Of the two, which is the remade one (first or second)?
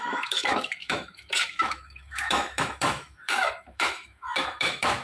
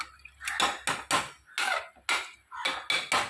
first